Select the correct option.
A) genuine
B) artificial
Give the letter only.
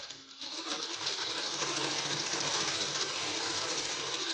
B